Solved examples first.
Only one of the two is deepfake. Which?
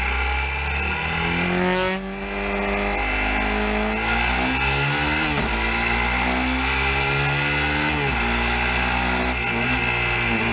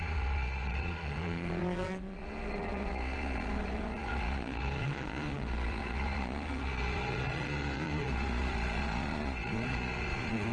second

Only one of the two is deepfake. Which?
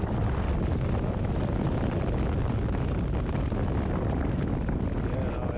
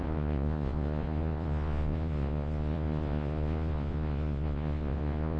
second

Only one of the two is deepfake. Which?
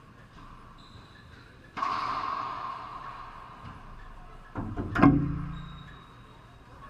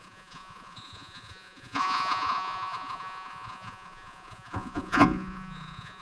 second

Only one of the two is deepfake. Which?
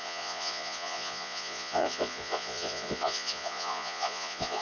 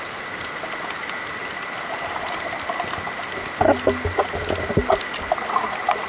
first